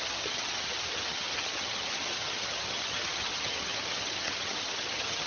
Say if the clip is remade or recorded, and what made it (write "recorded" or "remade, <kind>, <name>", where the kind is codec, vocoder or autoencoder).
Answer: remade, vocoder, HiFi-GAN